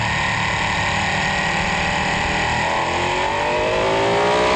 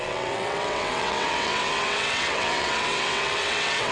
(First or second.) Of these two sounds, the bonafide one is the first